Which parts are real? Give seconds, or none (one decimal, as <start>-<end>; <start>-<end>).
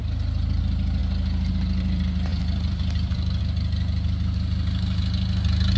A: 0.6-2.3; 3.4-5.8